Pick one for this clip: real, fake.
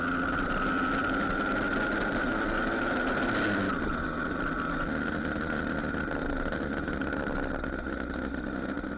real